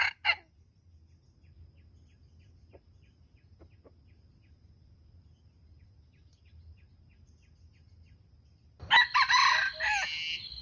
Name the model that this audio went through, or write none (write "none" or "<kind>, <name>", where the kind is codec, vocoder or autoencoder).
none